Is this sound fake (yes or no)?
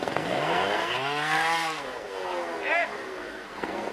yes